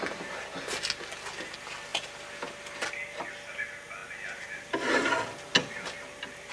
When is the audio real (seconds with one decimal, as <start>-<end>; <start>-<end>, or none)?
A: 0.0-1.9; 3.3-6.5